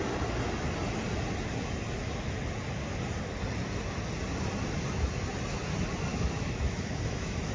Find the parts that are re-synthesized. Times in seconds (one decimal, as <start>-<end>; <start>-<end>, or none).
6.1-7.5